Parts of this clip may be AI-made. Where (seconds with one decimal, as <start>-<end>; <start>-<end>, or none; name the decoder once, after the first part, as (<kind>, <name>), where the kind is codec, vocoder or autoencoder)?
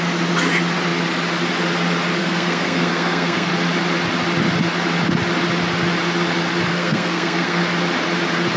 2.2-3.5 (codec, SNAC); 6.7-7.6